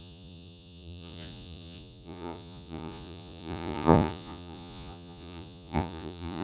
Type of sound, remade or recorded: remade